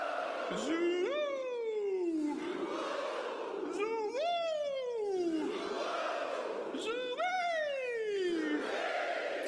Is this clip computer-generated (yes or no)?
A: no